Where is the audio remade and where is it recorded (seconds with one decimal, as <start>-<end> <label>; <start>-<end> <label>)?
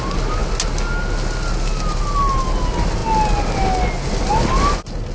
0.0-5.1 recorded